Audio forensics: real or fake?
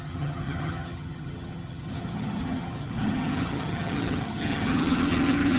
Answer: fake